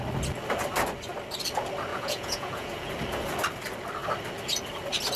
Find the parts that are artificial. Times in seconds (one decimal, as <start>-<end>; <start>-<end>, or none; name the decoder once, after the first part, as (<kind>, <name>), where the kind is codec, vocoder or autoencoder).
1.9-2.9 (vocoder, Vocos)